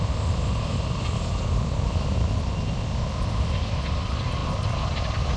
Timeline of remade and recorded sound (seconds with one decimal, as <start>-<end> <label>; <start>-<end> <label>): 0.0-5.4 recorded